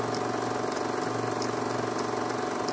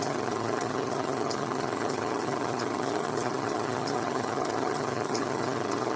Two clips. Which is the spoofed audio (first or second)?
second